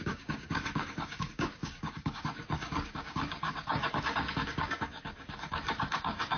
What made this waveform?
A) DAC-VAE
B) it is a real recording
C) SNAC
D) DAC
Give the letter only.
D